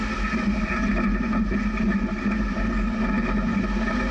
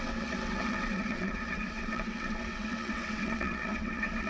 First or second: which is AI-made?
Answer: second